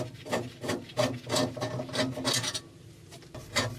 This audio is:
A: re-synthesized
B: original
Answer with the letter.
B